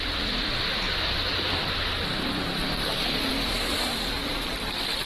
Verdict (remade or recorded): remade